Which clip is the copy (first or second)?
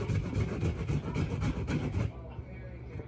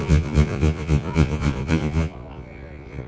second